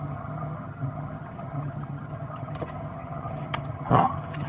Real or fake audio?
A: fake